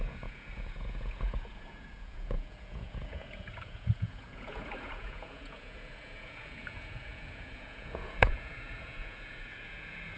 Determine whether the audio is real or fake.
fake